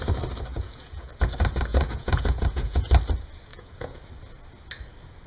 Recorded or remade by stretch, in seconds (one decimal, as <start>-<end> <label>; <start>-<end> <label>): 0.0-0.5 recorded; 0.5-1.1 remade; 1.1-1.7 recorded; 1.7-2.9 remade; 2.9-3.5 recorded; 3.5-4.0 remade; 4.0-5.3 recorded